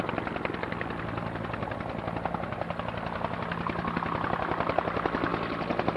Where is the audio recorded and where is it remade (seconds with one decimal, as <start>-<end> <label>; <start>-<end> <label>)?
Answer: 0.0-6.0 recorded